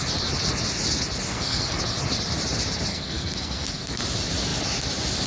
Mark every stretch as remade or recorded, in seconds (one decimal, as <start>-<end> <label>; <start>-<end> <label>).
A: 0.0-1.3 recorded; 1.3-1.8 remade; 1.8-2.9 recorded; 2.9-4.0 remade; 4.0-5.3 recorded